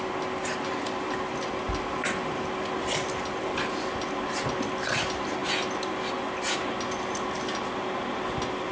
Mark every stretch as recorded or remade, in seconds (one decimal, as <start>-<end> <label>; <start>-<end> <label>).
0.0-8.7 recorded